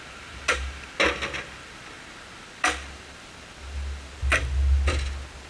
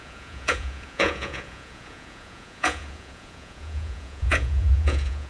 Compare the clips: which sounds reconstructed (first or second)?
second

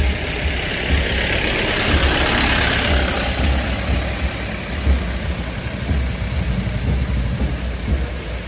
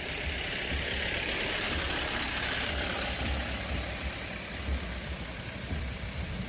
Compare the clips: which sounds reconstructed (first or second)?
second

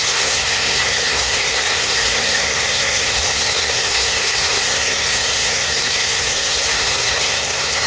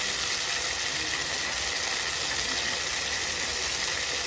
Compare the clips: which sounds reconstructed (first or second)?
first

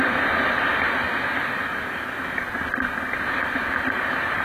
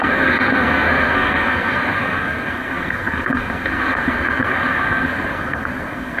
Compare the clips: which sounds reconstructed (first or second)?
second